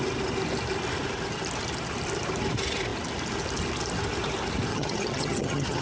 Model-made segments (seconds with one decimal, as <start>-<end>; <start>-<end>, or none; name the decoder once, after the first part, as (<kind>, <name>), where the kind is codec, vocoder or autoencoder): 4.7-5.8 (vocoder, HiFi-GAN)